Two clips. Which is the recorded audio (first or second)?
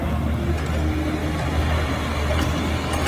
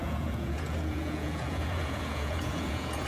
first